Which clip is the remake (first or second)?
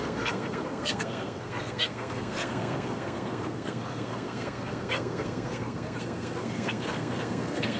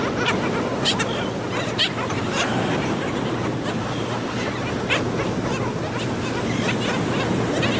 first